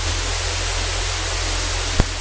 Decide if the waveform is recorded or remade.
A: recorded